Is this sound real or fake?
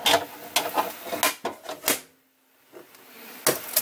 real